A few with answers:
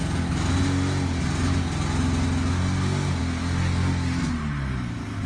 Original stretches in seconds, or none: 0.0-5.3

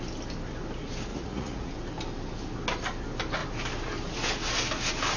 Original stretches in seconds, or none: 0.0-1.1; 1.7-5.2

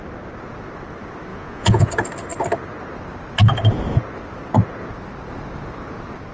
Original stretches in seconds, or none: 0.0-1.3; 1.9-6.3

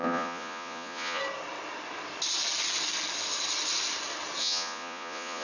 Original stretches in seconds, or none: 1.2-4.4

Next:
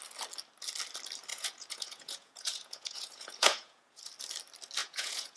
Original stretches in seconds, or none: 0.0-1.3; 4.0-4.8

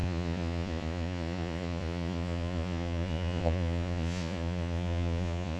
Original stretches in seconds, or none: none

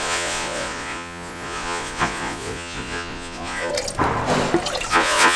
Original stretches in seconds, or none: 3.7-4.9

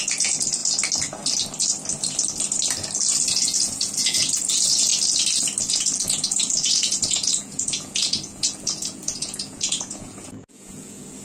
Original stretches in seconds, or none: 0.6-3.3; 4.9-5.7